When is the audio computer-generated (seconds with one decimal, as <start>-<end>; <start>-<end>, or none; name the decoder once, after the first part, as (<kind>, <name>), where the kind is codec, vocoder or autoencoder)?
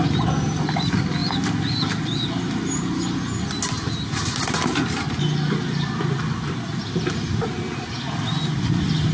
none